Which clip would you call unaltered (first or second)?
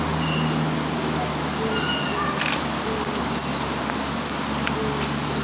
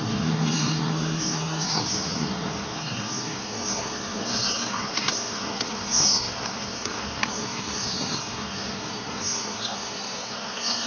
first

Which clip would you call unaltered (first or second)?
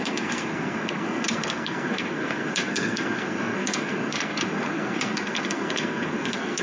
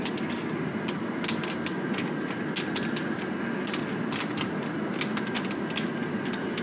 second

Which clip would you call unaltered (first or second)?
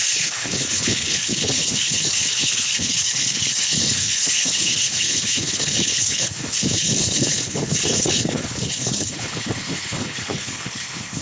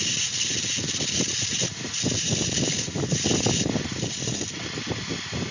second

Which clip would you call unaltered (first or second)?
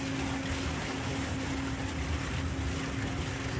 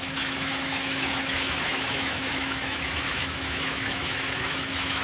first